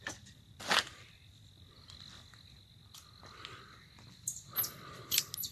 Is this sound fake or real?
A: real